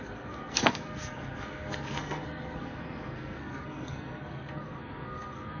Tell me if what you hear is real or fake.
fake